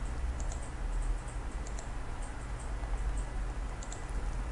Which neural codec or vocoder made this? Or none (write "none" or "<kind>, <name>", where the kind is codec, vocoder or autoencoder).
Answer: none